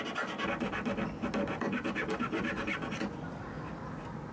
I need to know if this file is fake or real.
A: real